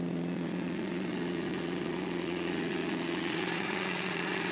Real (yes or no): no